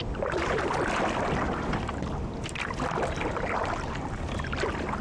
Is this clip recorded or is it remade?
remade